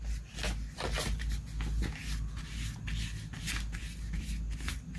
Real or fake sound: real